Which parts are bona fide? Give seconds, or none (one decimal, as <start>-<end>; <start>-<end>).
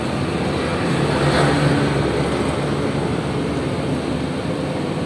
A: 0.0-5.1